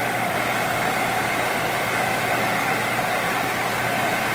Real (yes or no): yes